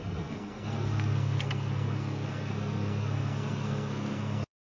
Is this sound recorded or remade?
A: remade